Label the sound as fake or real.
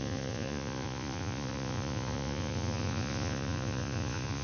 fake